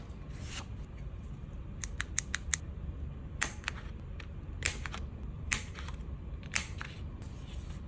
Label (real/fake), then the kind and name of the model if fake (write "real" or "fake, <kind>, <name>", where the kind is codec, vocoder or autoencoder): fake, vocoder, BigVGAN v2